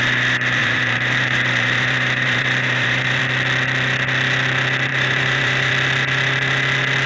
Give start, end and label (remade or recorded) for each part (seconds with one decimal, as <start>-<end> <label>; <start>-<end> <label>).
0.0-0.6 recorded; 0.6-3.2 remade; 3.2-4.9 recorded; 4.9-5.7 remade; 5.7-7.1 recorded